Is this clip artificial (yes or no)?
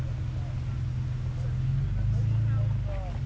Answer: no